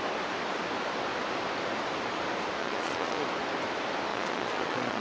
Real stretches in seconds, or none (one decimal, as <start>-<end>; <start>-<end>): 0.0-2.6; 3.2-4.1